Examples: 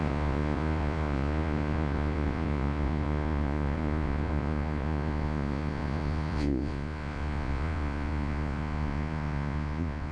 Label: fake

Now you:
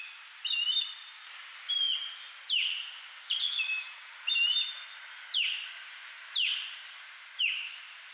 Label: real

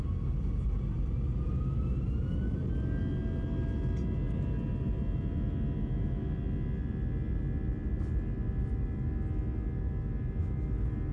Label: real